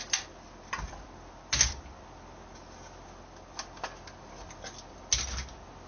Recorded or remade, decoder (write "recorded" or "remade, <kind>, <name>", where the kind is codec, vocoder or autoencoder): recorded